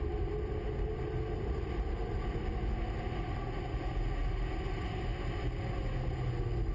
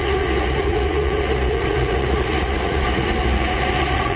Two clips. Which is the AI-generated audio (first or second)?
second